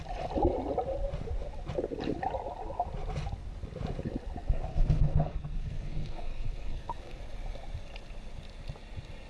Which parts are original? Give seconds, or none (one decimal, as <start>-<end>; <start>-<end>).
0.0-4.7; 7.2-9.3